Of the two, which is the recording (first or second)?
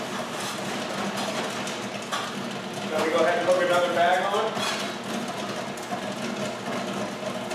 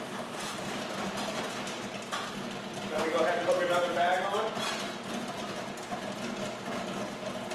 first